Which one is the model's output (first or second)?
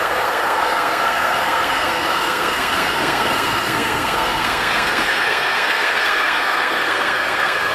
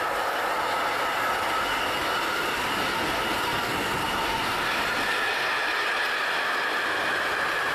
first